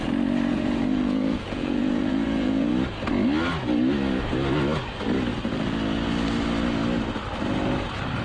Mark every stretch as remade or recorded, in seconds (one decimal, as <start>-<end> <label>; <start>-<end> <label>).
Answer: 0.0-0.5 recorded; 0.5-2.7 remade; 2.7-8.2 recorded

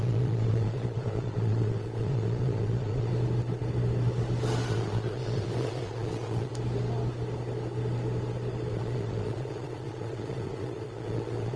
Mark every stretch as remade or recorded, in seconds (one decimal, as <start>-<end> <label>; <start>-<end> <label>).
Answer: 0.0-3.1 remade; 3.1-4.7 recorded; 4.7-6.5 remade; 6.5-8.7 recorded; 8.7-11.6 remade

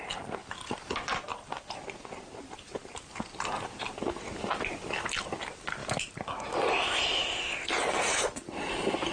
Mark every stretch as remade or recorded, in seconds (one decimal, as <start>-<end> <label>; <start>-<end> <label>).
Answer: 0.0-9.1 recorded